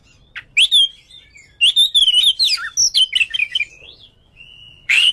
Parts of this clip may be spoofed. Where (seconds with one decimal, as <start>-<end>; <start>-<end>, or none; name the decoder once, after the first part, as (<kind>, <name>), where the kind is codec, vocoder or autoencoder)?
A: 3.4-5.1 (vocoder, Vocos)